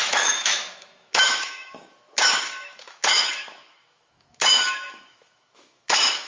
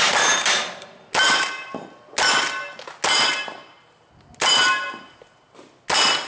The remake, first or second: first